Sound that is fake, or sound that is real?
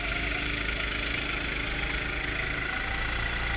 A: real